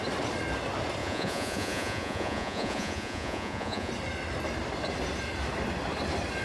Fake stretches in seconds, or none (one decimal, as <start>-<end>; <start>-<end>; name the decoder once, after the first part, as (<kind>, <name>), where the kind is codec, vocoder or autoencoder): 1.0-3.9 (vocoder, Vocos)